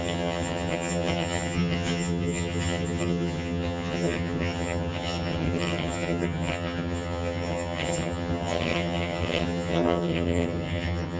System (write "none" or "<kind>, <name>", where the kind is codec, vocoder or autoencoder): vocoder, HiFi-GAN